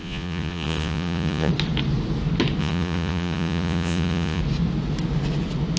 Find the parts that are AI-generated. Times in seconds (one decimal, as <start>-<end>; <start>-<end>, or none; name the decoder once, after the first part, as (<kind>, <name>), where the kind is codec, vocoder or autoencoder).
0.0-1.5 (vocoder, Vocos); 2.6-4.4